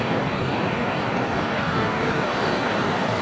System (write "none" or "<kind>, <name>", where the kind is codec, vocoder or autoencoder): codec, DAC